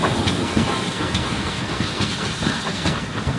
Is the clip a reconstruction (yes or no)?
yes